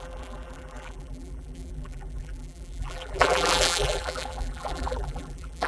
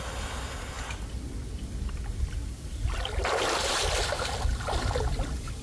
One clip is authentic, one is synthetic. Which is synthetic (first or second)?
first